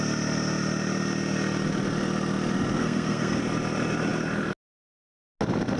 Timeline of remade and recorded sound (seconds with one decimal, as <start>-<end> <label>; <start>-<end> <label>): 0.0-2.8 recorded; 2.8-3.4 remade; 3.4-5.8 recorded